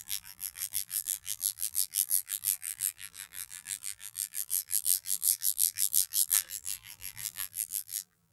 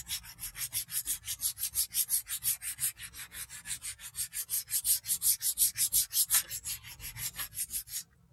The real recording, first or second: second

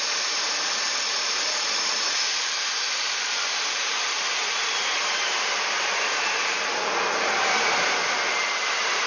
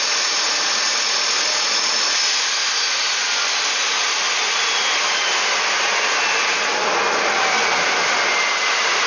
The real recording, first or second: second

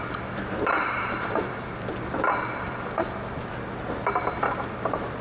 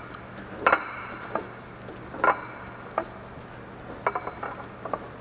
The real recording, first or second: second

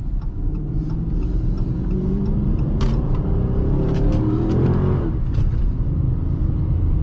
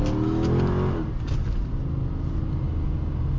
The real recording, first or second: second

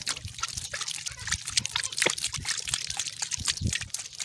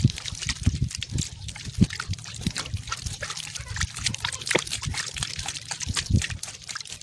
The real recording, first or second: first